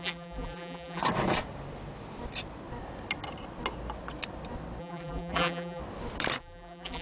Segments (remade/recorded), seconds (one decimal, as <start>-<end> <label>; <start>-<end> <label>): 0.0-1.0 remade; 1.0-4.8 recorded; 4.8-5.8 remade; 5.8-6.4 recorded; 6.4-7.0 remade